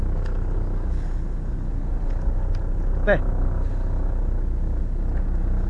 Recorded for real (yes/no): yes